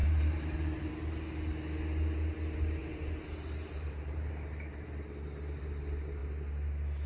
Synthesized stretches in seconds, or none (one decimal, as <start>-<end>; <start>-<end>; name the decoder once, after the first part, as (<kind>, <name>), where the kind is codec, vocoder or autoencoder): 0.0-0.9 (vocoder, BigVGAN v2); 2.8-4.3